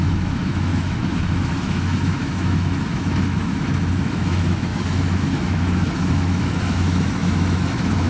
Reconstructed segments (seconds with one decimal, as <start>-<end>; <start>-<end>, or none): 0.0-8.1